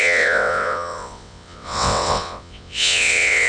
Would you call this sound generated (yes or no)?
yes